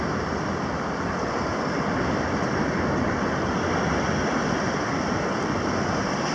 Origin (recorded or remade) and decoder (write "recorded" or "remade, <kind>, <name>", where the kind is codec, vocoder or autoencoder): recorded